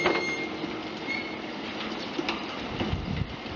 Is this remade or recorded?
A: recorded